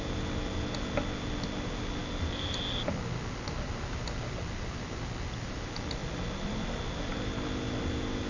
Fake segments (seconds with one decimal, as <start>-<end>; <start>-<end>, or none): none